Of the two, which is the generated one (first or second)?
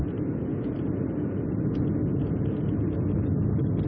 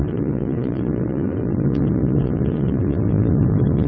second